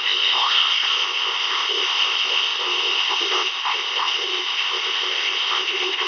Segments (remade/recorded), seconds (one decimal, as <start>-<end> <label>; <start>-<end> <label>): 0.0-6.1 remade